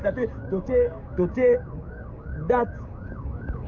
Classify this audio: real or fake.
fake